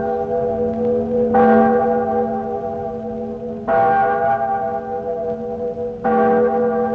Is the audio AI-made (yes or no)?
no